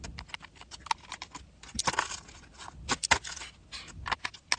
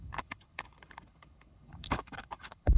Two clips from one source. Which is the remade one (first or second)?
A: second